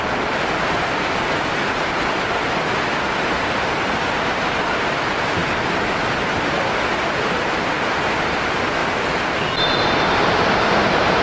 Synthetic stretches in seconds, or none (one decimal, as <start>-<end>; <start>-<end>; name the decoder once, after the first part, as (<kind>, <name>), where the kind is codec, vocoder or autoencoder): none